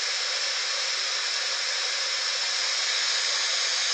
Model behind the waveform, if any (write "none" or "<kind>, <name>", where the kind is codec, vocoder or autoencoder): none